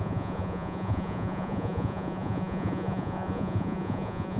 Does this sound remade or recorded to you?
remade